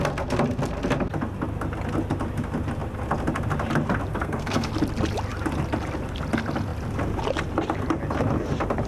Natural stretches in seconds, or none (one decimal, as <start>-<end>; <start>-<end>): 0.0-4.1; 4.7-8.9